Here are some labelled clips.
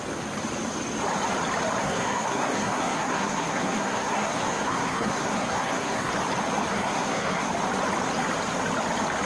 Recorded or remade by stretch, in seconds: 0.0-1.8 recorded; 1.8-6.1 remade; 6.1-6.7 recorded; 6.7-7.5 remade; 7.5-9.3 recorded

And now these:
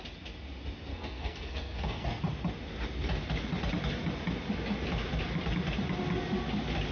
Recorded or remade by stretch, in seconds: 0.0-0.9 recorded; 0.9-2.2 remade; 2.2-6.9 recorded

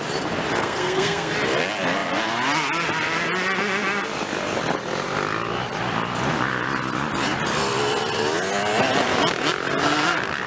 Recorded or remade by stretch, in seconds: 0.0-0.6 recorded; 0.6-1.3 remade; 1.3-10.5 recorded

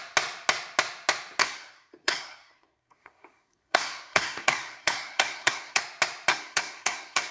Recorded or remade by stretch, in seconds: 0.0-1.4 recorded; 1.4-5.8 remade; 5.8-6.3 recorded; 6.3-7.3 remade

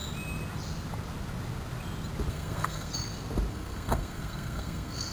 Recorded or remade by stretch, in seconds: 0.0-2.3 recorded; 2.3-2.9 remade; 2.9-3.5 recorded; 3.5-5.1 remade

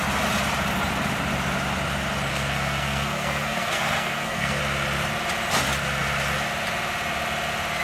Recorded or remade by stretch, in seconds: 0.0-2.3 recorded; 2.3-4.6 remade; 4.6-7.8 recorded